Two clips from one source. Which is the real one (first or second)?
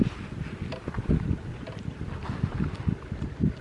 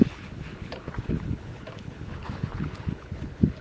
first